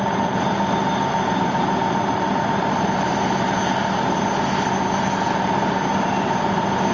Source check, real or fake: real